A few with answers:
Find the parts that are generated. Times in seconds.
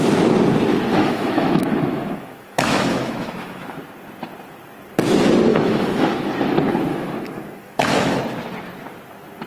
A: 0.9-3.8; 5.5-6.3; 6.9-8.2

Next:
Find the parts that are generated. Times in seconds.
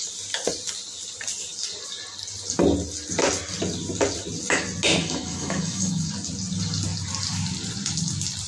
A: 5.0-6.1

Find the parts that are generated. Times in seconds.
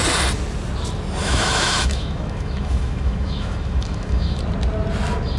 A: 1.2-4.4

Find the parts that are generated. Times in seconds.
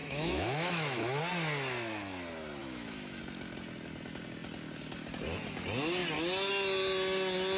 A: 0.0-1.2; 2.6-3.2